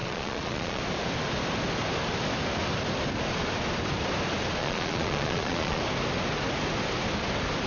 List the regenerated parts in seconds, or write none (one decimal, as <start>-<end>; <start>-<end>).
0.0-0.8; 4.6-5.8